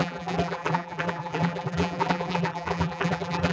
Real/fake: fake